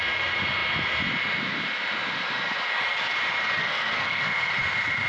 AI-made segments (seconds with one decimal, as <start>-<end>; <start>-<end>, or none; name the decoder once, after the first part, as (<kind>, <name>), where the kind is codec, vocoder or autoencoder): 3.6-4.5 (codec, SNAC)